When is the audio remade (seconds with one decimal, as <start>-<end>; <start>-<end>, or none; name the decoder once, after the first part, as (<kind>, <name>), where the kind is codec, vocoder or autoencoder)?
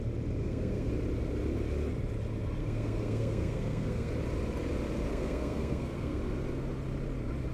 0.4-0.9 (codec, SNAC); 2.6-4.1; 5.1-6.2